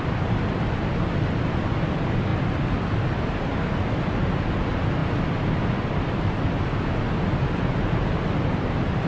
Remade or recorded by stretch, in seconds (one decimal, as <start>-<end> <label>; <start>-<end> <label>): 0.0-9.1 recorded